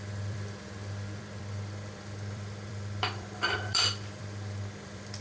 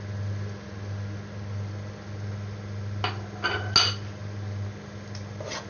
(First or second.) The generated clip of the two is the first